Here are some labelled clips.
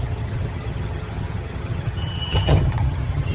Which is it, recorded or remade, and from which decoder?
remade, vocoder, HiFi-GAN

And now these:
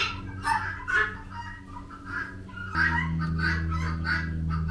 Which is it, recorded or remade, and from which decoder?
recorded